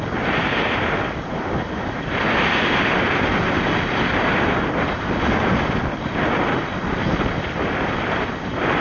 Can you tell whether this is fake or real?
real